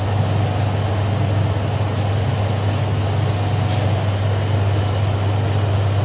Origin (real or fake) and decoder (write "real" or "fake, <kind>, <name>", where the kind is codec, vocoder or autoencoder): real